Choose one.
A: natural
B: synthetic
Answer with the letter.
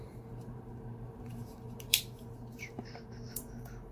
B